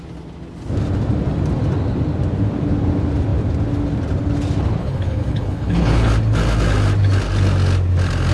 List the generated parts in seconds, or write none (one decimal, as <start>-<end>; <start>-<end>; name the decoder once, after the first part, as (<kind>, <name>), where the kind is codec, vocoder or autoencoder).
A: 4.8-6.1 (codec, HILCodec)